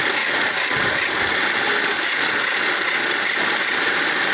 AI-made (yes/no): no